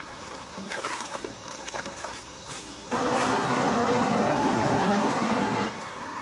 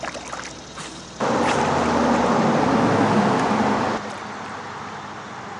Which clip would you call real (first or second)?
second